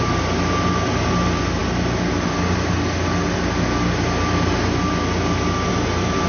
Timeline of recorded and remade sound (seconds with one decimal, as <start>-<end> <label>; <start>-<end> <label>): 0.0-6.3 recorded